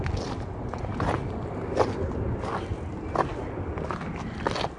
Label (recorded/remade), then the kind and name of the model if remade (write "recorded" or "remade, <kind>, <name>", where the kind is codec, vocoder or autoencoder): recorded